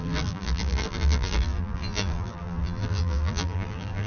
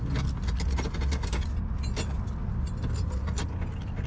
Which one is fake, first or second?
first